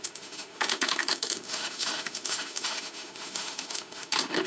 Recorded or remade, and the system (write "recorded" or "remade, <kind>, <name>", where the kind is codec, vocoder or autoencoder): remade, autoencoder, DAC-VAE